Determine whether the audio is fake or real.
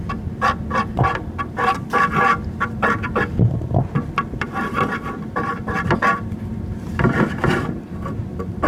fake